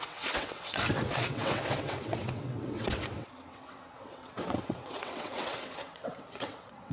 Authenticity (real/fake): fake